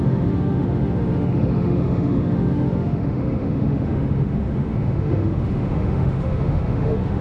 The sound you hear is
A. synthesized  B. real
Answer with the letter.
A